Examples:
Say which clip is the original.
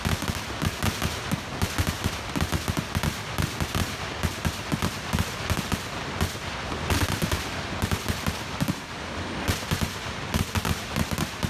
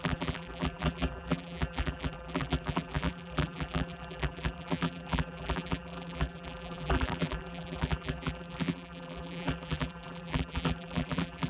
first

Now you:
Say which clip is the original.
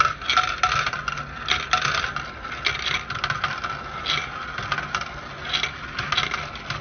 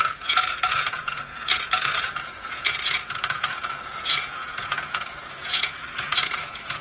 first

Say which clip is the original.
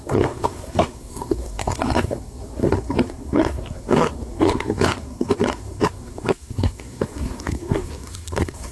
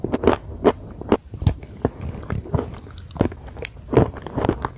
second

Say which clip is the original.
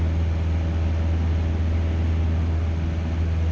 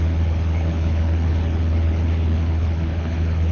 first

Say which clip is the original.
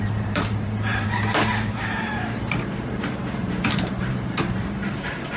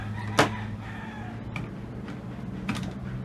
second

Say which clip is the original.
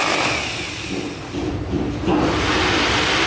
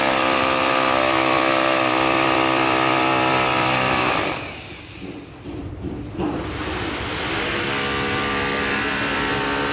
first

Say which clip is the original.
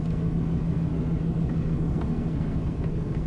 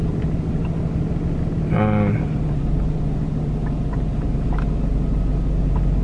second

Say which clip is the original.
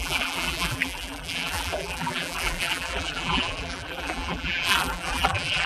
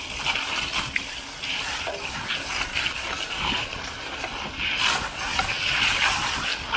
second